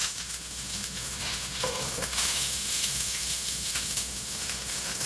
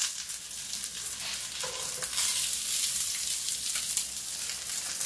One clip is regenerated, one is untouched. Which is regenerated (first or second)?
first